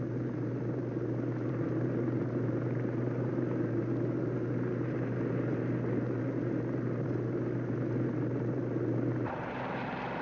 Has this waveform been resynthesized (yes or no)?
no